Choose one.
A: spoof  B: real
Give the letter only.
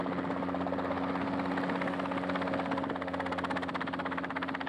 B